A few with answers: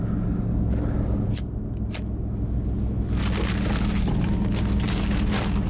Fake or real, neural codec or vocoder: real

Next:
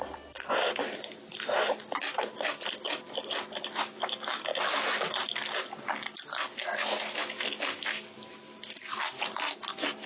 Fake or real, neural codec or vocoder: real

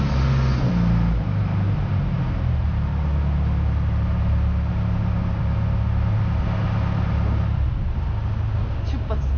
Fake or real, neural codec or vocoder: real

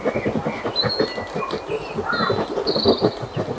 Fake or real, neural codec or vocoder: real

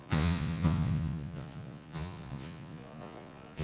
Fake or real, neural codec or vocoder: fake, vocoder, Vocos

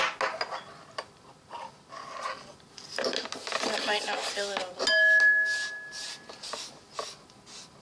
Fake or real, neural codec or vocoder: real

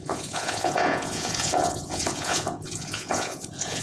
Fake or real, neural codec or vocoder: fake, vocoder, Vocos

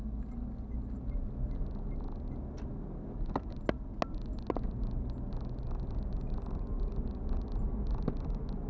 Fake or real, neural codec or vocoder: real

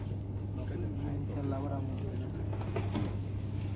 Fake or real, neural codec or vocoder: real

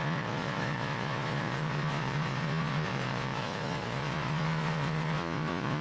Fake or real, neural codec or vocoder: fake, vocoder, Vocos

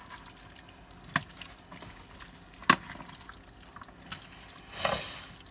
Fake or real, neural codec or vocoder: real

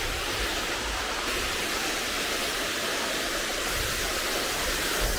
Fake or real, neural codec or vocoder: real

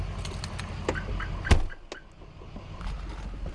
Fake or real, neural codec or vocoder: real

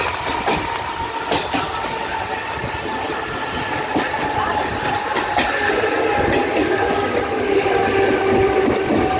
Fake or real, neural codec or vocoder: real